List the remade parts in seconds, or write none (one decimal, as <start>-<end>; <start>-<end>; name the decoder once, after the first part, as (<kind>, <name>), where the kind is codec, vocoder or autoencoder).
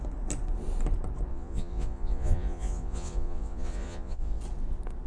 1.3-4.4 (vocoder, Vocos)